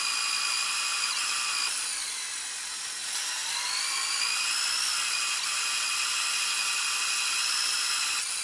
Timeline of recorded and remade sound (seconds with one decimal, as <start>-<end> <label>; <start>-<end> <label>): 0.0-8.4 recorded